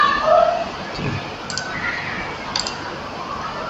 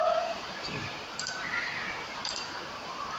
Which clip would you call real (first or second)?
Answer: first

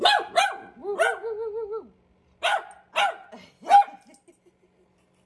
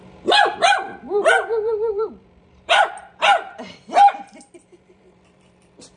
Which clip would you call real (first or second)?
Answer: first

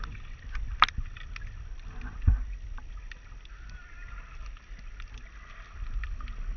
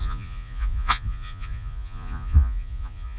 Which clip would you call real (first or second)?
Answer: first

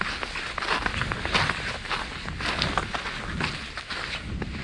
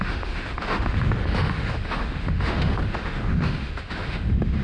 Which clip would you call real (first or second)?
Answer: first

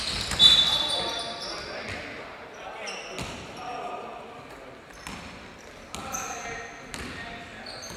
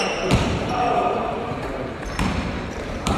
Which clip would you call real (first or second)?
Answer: first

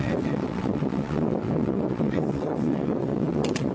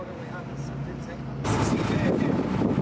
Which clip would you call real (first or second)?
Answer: second